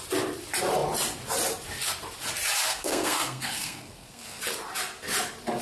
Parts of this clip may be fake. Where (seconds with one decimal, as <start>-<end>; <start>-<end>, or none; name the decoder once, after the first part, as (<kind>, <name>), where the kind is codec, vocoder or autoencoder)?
2.7-4.4 (codec, SNAC)